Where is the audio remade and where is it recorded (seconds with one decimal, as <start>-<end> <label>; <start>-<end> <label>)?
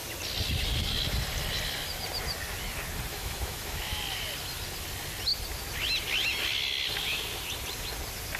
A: 0.0-3.1 recorded; 3.1-4.0 remade; 4.0-8.4 recorded